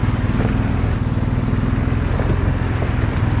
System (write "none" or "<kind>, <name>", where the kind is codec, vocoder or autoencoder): none